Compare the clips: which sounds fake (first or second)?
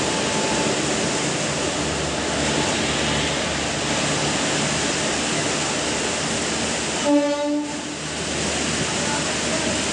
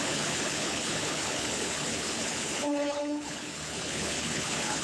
second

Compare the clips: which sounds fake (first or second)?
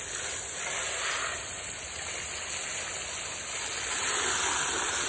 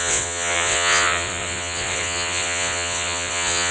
second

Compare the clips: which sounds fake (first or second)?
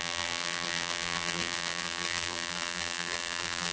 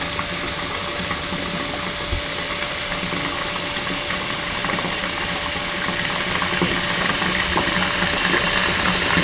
first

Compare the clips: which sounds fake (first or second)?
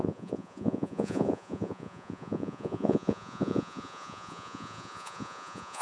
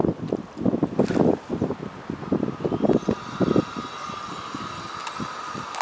first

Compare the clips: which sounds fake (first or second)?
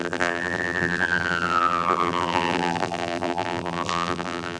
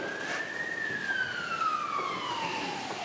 first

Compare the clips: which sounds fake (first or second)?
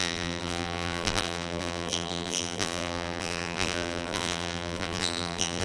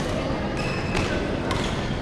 first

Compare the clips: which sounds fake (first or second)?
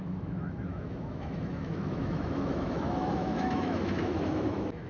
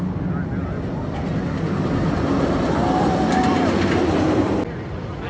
first